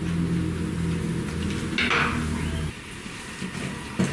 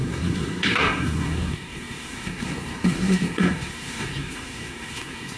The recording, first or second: first